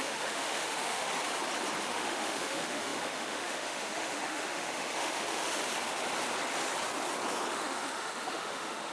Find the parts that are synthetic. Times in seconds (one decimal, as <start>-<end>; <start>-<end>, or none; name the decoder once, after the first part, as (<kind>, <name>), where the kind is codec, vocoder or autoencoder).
0.0-1.1 (autoencoder, DAC-VAE); 1.8-5.6; 7.5-8.9